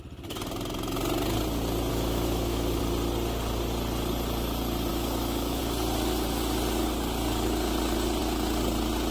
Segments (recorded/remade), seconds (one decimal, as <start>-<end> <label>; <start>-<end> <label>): 0.0-1.9 recorded; 1.9-2.8 remade; 2.8-4.9 recorded; 4.9-5.6 remade; 5.6-9.1 recorded